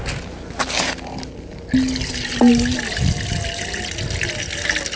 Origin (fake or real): real